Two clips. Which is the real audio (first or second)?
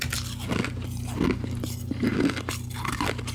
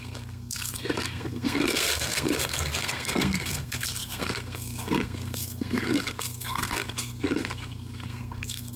first